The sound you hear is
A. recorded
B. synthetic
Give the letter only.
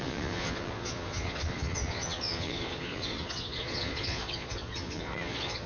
B